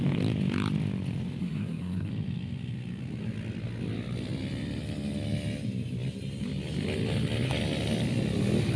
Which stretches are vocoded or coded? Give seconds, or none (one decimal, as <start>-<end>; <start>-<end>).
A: 1.4-2.1